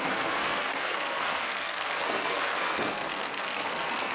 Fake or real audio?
fake